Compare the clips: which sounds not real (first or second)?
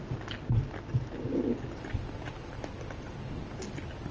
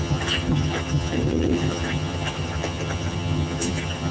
second